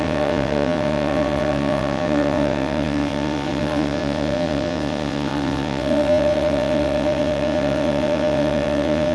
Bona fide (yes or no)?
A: no